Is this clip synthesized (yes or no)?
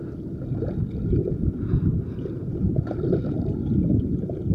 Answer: no